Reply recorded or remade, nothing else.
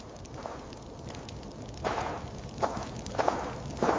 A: recorded